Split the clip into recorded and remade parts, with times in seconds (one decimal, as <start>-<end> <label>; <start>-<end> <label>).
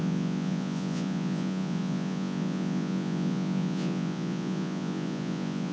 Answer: 0.0-5.7 remade